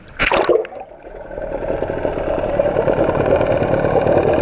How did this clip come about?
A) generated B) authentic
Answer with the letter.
B